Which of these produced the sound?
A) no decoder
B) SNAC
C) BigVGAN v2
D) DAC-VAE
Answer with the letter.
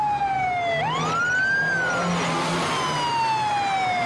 A